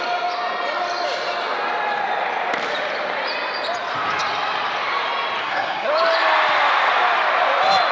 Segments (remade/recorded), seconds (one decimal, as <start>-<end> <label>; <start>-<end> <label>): 0.0-5.4 recorded; 5.4-5.9 remade; 5.9-7.9 recorded